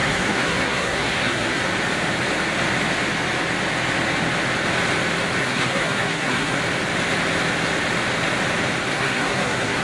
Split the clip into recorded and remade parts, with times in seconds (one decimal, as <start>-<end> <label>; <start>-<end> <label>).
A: 0.0-1.6 remade; 1.6-5.4 recorded; 5.4-6.6 remade; 6.6-8.9 recorded; 8.9-9.8 remade